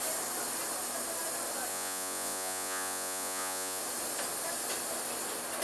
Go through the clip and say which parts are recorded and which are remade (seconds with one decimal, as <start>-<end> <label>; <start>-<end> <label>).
0.0-1.7 recorded; 1.7-3.8 remade; 3.8-5.6 recorded